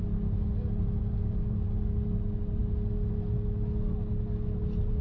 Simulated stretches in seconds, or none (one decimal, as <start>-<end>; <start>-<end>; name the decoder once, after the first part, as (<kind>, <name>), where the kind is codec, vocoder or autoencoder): none

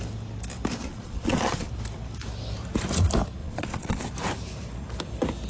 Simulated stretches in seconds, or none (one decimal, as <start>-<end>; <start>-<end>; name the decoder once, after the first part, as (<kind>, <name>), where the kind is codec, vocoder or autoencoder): 0.8-1.7 (vocoder, Vocos); 3.4-4.0

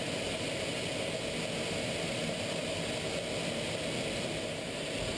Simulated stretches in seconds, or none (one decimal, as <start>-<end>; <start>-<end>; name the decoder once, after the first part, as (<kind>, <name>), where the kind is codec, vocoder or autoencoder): none

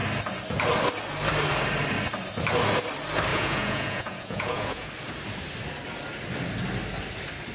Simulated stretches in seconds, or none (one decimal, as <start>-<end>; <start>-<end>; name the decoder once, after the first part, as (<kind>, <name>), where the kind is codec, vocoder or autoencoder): 3.3-4.9 (vocoder, Vocos)

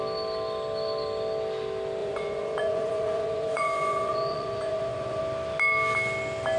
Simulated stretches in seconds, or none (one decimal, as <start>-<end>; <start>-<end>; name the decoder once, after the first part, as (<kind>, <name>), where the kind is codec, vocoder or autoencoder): 2.0-5.2 (vocoder, Vocos)

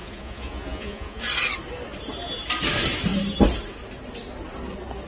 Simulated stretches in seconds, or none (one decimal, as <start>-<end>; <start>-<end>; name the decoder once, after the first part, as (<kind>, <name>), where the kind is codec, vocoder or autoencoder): 0.0-1.2 (vocoder, Vocos)

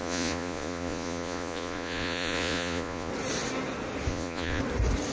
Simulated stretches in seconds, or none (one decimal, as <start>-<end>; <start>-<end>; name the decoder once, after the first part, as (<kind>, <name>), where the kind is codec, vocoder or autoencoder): 0.0-3.1 (vocoder, Vocos); 4.1-4.6